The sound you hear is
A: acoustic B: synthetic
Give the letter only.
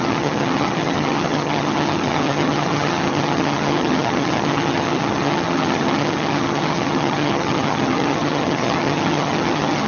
B